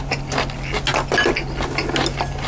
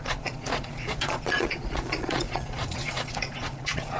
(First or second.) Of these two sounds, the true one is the first